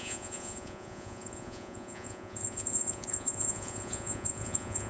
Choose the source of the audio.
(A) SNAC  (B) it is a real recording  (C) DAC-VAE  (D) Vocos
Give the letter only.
D